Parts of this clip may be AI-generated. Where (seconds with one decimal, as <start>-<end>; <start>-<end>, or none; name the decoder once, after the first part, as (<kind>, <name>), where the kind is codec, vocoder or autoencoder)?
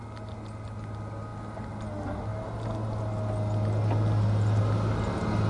none